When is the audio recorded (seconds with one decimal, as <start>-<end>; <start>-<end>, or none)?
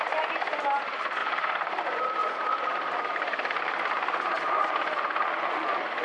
0.0-1.2; 1.8-2.2; 4.6-6.0